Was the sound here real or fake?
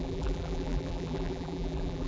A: fake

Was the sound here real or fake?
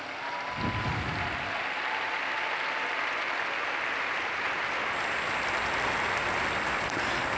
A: real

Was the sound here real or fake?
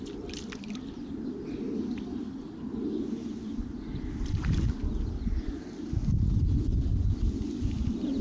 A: real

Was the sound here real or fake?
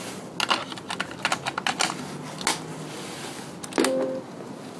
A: real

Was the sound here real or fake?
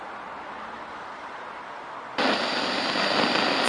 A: fake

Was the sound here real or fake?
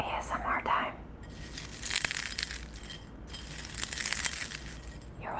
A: real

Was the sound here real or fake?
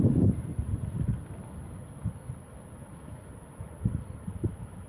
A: real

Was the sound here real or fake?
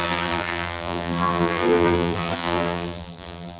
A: fake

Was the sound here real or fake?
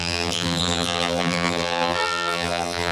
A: fake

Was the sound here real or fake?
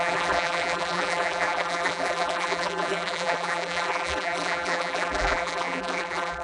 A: fake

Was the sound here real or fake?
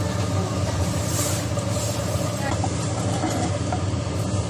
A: fake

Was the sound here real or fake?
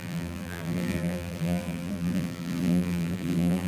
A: fake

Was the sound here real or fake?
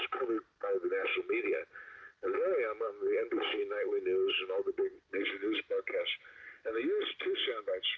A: real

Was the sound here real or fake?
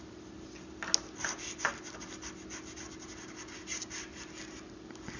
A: real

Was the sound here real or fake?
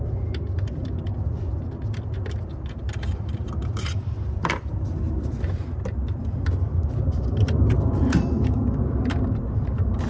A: fake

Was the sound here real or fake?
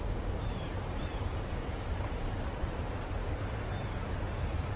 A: fake